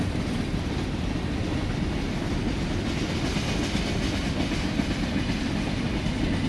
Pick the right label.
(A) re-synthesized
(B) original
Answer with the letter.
B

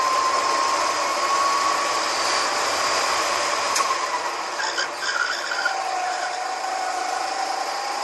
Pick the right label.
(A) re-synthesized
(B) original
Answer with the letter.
B